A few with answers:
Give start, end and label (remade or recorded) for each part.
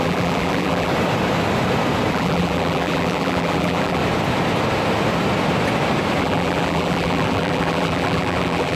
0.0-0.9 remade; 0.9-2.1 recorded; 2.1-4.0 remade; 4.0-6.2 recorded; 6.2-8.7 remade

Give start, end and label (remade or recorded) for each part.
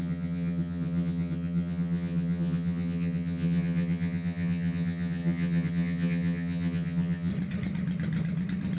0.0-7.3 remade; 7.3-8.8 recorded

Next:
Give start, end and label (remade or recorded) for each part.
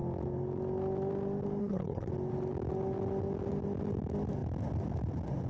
0.0-1.6 recorded; 1.6-2.1 remade; 2.1-5.5 recorded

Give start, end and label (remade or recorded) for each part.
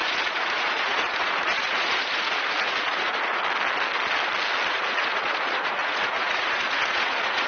0.0-3.4 remade; 3.4-4.7 recorded; 4.7-7.5 remade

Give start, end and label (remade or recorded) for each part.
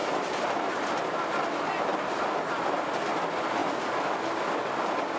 0.0-5.2 recorded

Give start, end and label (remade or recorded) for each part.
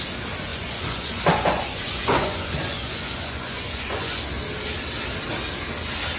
0.0-0.5 recorded; 0.5-4.2 remade; 4.2-6.2 recorded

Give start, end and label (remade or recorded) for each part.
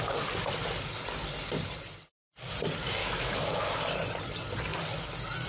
0.0-3.0 recorded; 3.0-3.6 remade; 3.6-5.5 recorded